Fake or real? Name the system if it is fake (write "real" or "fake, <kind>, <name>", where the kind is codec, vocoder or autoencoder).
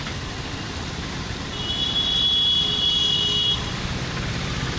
real